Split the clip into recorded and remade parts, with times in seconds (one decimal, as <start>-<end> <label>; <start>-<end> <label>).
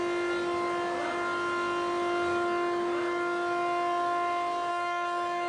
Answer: 0.0-4.7 recorded; 4.7-5.5 remade